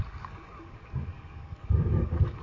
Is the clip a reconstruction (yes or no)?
yes